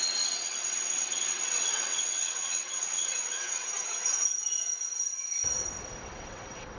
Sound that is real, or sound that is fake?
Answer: fake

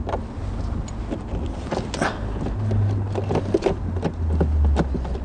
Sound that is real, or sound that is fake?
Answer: real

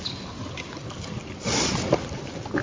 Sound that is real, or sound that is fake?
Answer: real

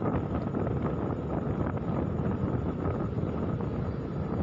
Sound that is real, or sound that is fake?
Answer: real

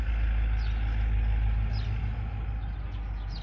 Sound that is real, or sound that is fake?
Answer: real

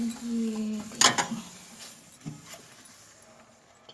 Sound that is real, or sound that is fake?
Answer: real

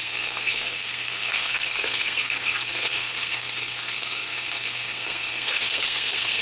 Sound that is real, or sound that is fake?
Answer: fake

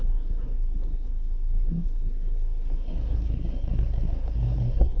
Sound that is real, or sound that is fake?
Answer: fake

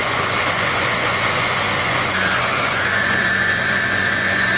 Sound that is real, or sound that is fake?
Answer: fake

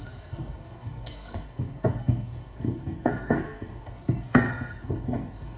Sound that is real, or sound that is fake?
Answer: fake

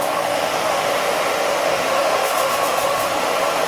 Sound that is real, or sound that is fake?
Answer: fake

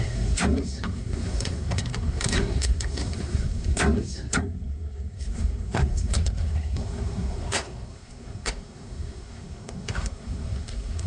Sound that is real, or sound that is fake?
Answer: fake